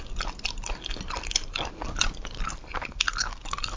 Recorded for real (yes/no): yes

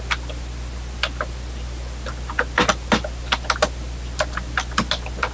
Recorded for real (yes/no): yes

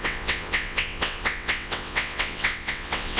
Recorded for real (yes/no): no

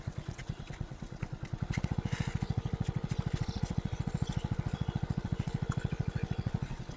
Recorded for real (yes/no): no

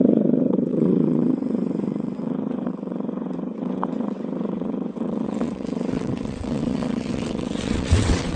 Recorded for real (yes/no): no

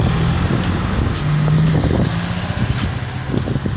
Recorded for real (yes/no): yes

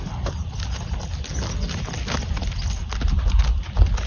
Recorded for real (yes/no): yes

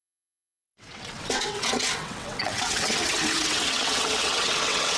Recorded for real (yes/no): no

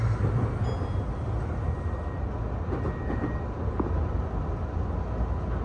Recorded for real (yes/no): yes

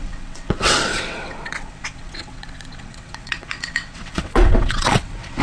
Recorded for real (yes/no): no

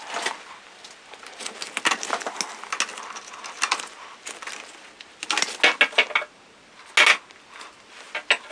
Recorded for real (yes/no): yes